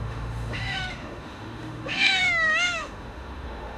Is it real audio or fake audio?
fake